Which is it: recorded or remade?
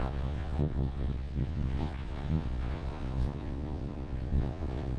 remade